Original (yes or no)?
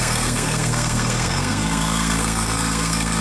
no